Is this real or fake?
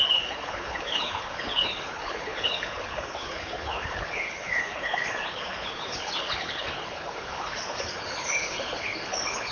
fake